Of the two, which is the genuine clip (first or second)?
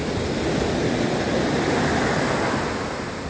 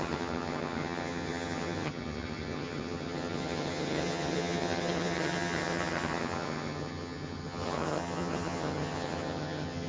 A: first